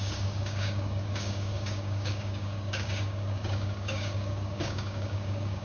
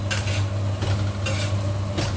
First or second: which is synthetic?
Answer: first